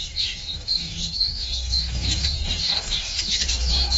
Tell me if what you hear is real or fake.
fake